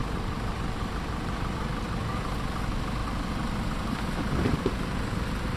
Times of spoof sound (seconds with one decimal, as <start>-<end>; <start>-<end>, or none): 0.0-2.3; 3.0-5.6

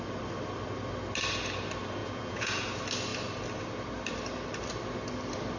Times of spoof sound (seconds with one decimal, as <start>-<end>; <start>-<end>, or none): 2.0-2.7